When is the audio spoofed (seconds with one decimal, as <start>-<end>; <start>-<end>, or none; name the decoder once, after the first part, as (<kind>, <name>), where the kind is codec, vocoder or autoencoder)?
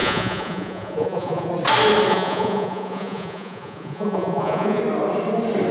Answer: 0.0-1.5 (vocoder, Vocos); 2.1-4.8